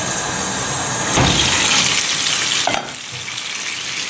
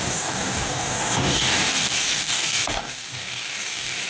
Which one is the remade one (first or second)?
second